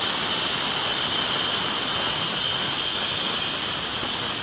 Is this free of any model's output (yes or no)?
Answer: yes